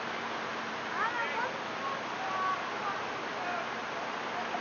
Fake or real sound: real